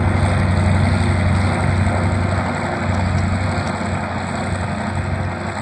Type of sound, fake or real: real